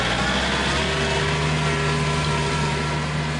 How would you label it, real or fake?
real